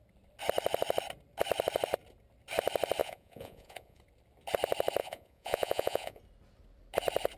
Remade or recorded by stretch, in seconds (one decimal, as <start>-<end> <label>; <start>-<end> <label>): 0.0-3.0 recorded; 3.0-4.0 remade; 4.0-5.0 recorded; 5.0-6.2 remade; 6.2-7.4 recorded